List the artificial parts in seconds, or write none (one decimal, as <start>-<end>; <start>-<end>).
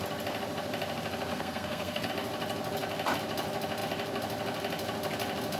1.3-2.1